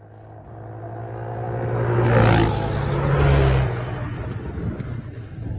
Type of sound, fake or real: real